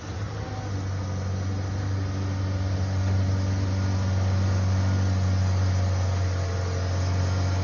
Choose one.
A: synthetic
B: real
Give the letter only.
B